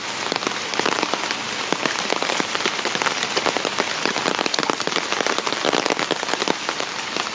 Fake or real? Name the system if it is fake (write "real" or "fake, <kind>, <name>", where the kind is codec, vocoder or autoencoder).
real